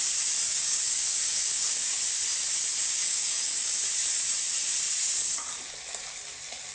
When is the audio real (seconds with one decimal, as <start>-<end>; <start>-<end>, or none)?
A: 0.0-0.5; 2.0-2.8; 3.8-6.7